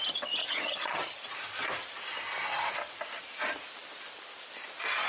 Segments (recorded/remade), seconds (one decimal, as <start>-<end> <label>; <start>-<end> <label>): 0.0-0.4 recorded; 0.4-1.2 remade; 1.2-5.1 recorded